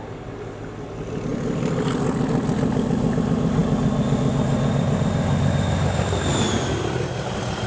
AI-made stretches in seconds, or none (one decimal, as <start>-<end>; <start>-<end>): none